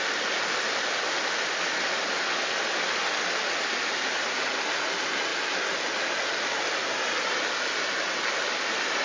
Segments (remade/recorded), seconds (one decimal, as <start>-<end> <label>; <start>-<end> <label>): 0.0-9.0 recorded